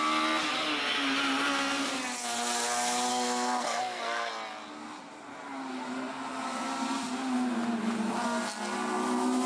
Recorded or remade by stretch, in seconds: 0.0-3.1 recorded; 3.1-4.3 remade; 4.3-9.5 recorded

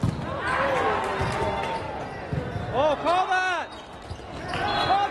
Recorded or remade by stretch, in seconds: 0.0-5.1 recorded